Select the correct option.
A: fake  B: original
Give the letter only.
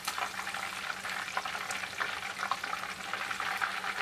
B